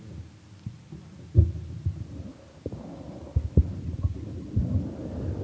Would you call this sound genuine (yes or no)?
yes